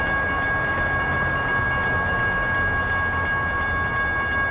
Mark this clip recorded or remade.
recorded